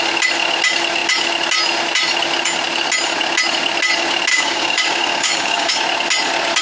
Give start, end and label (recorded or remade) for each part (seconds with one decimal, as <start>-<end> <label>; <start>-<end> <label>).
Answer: 0.0-4.3 recorded; 4.3-5.8 remade; 5.8-6.6 recorded